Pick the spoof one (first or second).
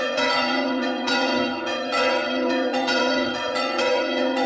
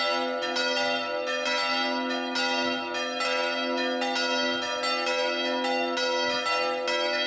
first